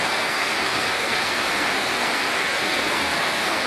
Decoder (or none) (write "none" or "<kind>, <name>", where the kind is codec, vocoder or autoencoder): codec, SNAC